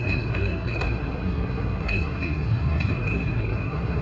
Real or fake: fake